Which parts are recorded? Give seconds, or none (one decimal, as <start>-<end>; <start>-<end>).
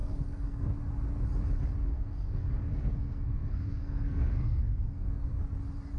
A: 0.8-1.8; 5.4-6.0